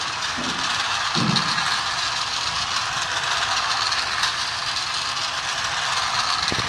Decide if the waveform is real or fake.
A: real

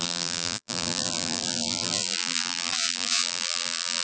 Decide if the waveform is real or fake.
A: fake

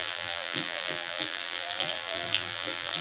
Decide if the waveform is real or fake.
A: fake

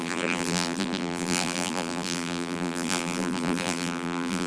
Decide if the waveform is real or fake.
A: fake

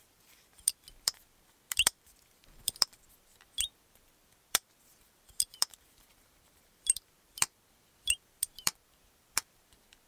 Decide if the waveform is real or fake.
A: fake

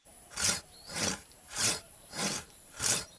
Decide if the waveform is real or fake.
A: fake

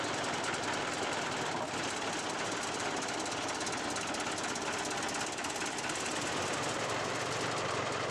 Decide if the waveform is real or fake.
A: real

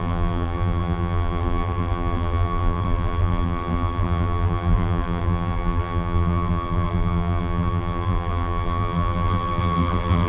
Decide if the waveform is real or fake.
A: fake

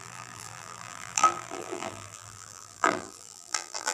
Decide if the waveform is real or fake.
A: fake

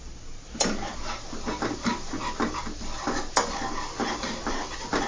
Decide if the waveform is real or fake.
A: real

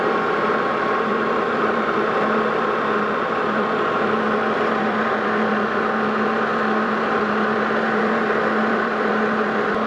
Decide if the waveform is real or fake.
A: fake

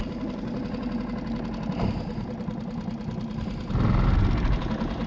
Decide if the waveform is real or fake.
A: real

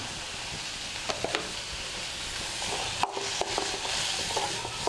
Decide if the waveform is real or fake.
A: real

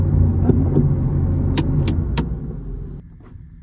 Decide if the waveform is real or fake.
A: real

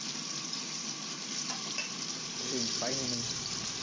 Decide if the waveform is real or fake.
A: fake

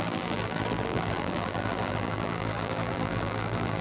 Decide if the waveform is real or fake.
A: fake